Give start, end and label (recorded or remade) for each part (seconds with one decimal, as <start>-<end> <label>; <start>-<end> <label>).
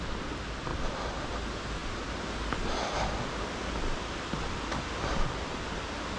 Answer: 0.0-6.2 recorded